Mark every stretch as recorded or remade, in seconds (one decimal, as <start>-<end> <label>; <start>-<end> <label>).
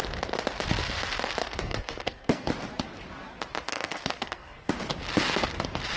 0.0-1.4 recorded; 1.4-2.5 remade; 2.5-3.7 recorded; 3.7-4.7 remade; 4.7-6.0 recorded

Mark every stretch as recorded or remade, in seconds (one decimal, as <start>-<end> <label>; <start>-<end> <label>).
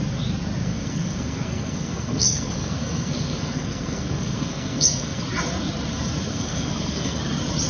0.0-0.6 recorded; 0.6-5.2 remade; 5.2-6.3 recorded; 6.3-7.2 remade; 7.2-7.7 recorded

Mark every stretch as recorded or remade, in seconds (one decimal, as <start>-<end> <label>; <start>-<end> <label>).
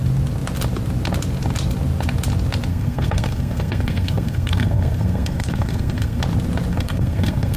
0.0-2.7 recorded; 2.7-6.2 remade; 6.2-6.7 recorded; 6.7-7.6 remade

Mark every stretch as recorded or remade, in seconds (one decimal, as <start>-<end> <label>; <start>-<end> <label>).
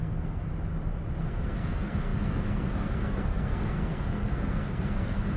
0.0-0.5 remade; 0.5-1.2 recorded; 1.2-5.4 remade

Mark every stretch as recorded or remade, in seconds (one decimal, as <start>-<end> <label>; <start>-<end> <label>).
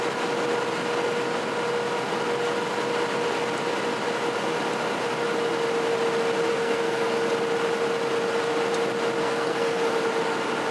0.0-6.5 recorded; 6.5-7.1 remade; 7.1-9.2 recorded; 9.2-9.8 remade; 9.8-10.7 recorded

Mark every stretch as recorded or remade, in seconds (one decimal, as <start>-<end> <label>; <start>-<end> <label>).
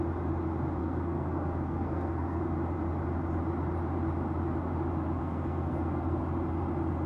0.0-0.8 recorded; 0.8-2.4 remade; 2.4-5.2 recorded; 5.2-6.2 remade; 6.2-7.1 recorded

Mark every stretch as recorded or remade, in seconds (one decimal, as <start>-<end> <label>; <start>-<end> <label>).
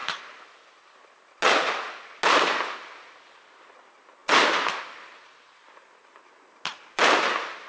0.0-7.7 recorded